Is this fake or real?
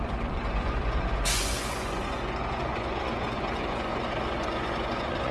fake